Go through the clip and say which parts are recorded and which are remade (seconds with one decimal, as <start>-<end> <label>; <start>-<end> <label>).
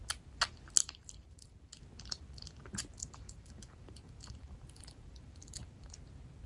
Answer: 0.0-0.8 recorded; 0.8-1.8 remade; 1.8-3.0 recorded; 3.0-5.9 remade; 5.9-6.5 recorded